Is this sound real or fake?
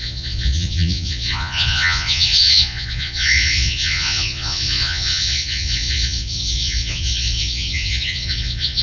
fake